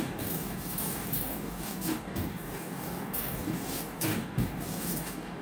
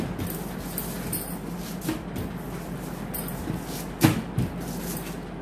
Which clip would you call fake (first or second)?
first